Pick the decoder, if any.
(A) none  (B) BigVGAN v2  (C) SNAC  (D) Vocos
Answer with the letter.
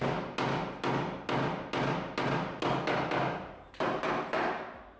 A